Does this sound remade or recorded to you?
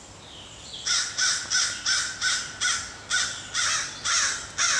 recorded